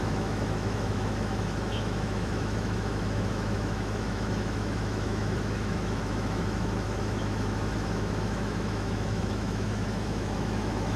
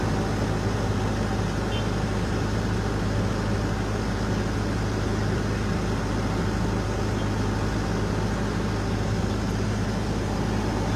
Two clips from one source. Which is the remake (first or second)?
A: first